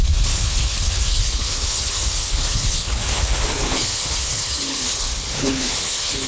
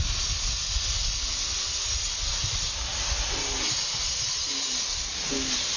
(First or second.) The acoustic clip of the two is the second